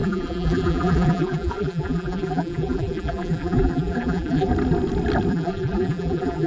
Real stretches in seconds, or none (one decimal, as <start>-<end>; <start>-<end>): 4.5-5.3